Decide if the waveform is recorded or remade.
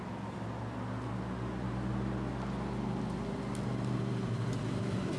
recorded